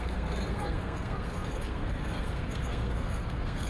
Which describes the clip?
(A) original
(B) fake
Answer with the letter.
B